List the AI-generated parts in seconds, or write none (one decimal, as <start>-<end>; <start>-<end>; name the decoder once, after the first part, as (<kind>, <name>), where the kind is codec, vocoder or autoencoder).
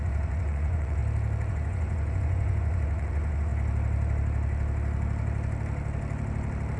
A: 0.0-1.0 (vocoder, Vocos); 1.5-3.5